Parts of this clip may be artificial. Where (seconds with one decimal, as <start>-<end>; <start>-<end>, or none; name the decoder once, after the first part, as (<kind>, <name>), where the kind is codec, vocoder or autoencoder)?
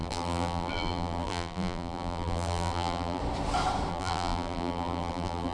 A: 0.0-3.2 (vocoder, BigVGAN v2); 3.9-5.5